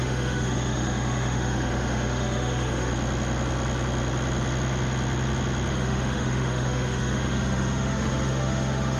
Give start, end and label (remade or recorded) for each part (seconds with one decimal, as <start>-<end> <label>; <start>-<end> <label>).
0.0-2.9 remade; 2.9-5.7 recorded; 5.7-9.0 remade